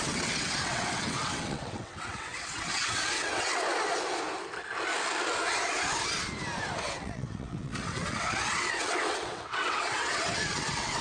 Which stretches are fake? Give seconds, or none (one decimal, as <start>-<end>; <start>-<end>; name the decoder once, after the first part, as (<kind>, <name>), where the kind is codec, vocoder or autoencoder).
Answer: 0.0-3.5 (vocoder, WaveNeXt); 6.8-11.0